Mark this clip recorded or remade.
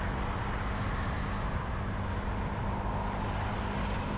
recorded